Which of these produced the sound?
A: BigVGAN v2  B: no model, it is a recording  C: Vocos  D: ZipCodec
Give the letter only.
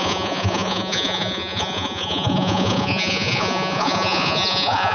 C